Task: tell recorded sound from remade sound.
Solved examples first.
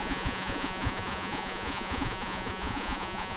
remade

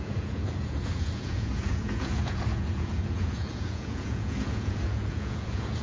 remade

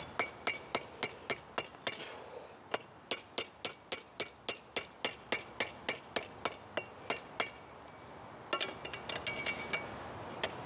recorded